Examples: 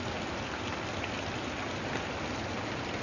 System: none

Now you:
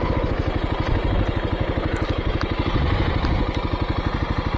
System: none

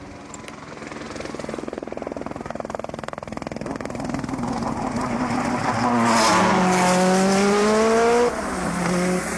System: none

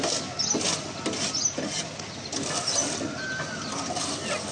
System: none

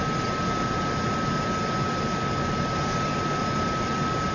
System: none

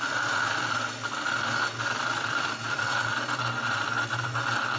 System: none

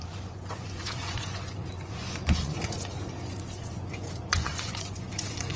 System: vocoder, Vocos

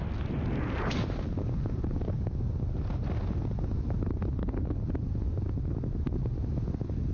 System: none